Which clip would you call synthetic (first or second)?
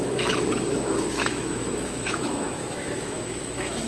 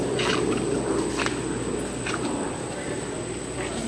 first